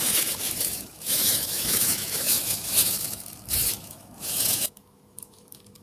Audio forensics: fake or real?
fake